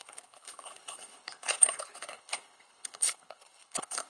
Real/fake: fake